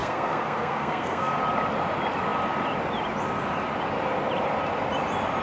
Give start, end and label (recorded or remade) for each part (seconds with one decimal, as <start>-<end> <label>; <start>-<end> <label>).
0.0-1.4 remade; 1.4-5.4 recorded